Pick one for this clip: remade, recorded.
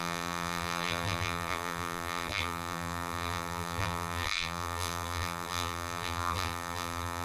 remade